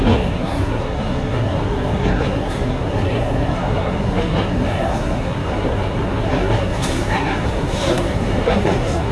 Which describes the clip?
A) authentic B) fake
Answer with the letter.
B